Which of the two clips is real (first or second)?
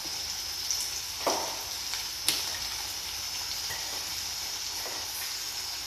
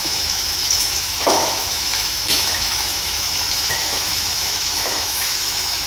first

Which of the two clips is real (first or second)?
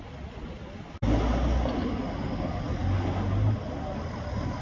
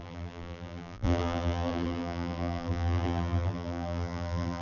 first